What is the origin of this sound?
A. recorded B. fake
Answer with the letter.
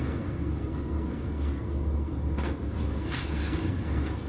B